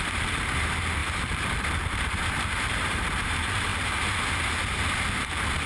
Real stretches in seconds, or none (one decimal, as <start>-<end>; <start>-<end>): 3.7-4.8